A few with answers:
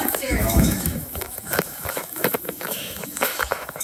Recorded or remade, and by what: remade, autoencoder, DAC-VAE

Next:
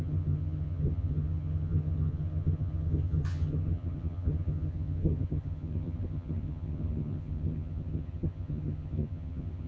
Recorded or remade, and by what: remade, vocoder, HiFi-GAN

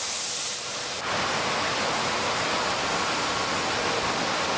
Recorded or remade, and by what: recorded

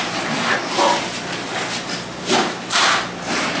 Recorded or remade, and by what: recorded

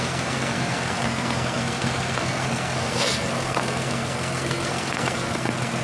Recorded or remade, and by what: remade, codec, SNAC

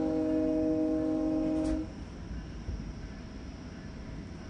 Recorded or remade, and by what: recorded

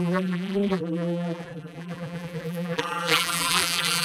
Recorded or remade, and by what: remade, vocoder, BigVGAN v2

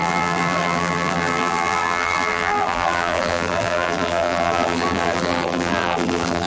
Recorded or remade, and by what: remade, vocoder, BigVGAN v2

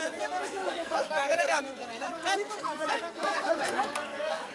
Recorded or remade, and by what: remade, codec, SNAC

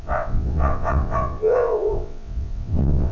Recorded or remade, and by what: remade, vocoder, WaveNeXt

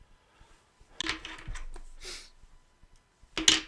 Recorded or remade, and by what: recorded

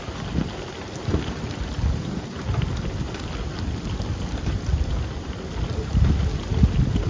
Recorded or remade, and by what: recorded